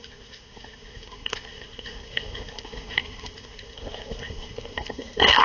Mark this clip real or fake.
fake